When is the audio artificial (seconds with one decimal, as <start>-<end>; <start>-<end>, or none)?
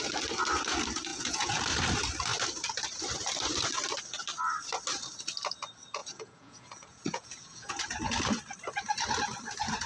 1.1-1.6; 6.0-7.8